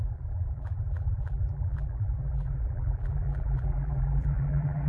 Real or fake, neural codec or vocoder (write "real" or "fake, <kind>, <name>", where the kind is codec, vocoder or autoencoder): fake, vocoder, BigVGAN v2